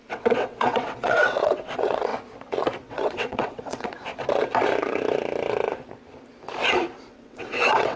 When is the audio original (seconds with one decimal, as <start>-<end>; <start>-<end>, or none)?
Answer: 2.1-2.8; 3.9-7.1